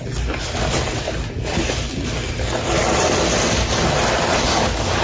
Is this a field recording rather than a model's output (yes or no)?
yes